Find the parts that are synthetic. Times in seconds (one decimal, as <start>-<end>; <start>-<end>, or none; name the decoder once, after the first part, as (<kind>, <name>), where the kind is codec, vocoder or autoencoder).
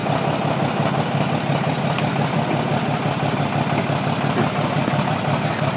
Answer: none